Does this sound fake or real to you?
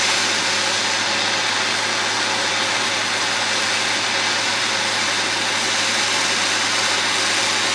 real